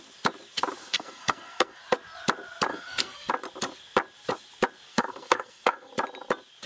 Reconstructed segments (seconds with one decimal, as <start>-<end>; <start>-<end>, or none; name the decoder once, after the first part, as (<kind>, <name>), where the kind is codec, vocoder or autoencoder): 0.8-1.8 (codec, SNAC); 2.7-3.3; 4.9-5.9